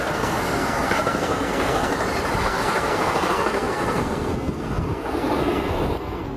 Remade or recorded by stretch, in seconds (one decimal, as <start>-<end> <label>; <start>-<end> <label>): 0.0-1.9 remade; 1.9-2.4 recorded; 2.4-6.4 remade